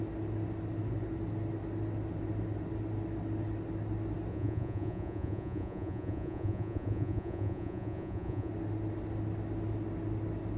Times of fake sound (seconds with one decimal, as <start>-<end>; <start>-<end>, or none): 4.3-8.5